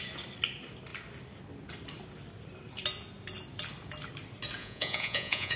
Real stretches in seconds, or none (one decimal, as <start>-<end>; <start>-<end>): 0.0-4.6